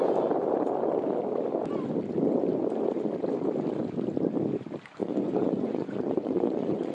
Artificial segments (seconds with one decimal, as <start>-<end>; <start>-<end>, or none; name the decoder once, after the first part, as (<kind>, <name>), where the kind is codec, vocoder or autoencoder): 5.0-6.9 (vocoder, Vocos)